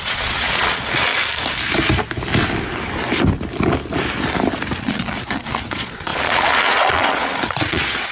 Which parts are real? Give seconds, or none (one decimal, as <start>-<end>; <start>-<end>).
1.1-4.8